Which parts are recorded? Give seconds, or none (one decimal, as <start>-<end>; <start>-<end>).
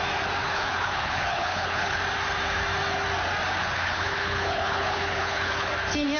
0.0-0.4; 2.0-3.6; 5.7-6.2